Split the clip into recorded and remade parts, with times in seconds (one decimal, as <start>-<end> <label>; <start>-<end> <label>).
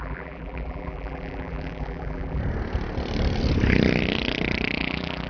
0.0-2.4 remade; 2.4-4.8 recorded; 4.8-5.3 remade